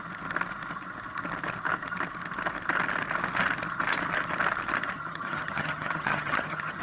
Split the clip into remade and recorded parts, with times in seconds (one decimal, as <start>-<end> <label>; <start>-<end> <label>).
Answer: 0.0-5.0 recorded; 5.0-6.8 remade